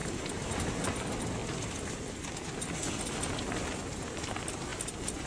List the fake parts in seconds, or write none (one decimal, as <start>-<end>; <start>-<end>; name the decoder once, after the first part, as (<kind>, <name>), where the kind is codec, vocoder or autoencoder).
none